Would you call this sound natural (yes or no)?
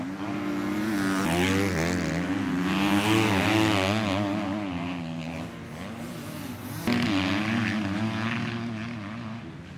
yes